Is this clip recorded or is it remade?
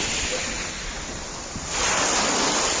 recorded